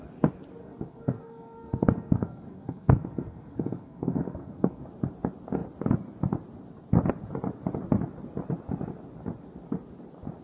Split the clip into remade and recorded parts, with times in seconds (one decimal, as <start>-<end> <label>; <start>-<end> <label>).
0.0-0.6 recorded; 0.6-4.9 remade; 4.9-10.4 recorded